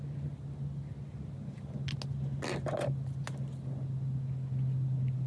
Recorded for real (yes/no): yes